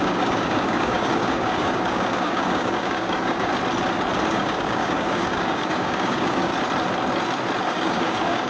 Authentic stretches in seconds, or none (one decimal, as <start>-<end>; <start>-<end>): 3.5-4.3; 6.5-7.6